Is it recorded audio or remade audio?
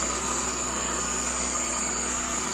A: remade